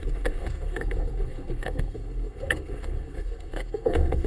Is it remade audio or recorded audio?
remade